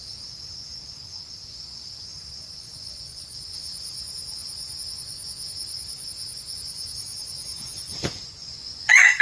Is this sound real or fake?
fake